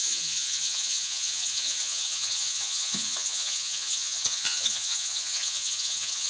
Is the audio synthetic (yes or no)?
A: yes